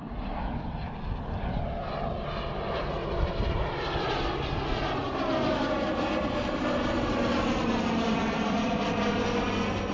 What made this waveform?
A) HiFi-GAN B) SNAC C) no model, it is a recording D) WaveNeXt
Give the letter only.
C